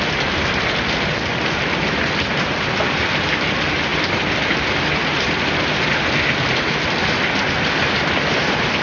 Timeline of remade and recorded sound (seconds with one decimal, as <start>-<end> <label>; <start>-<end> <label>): 0.0-8.8 recorded